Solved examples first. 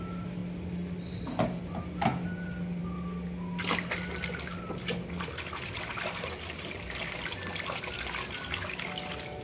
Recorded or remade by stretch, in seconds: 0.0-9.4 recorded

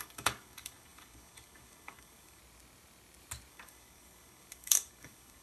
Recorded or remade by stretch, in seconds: 0.0-2.4 remade; 2.4-3.5 recorded; 3.5-5.4 remade

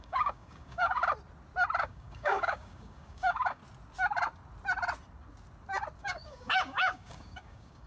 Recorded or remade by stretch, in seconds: 0.0-1.0 remade; 1.0-1.8 recorded; 1.8-3.6 remade; 3.6-6.0 recorded; 6.0-7.9 remade

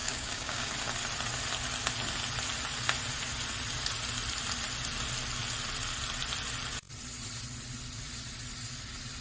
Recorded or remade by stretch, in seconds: 0.0-0.7 remade; 0.7-9.2 recorded

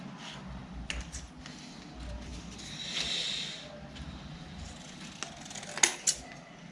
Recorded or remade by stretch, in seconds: 0.0-6.7 recorded